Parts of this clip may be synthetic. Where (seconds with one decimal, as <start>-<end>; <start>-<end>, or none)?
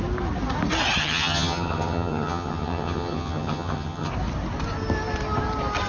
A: 1.0-4.1